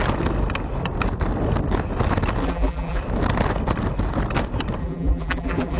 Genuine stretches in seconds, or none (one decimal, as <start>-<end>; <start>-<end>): 0.0-2.4; 3.0-4.8